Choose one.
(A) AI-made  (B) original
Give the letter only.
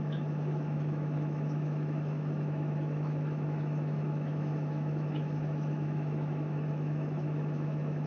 A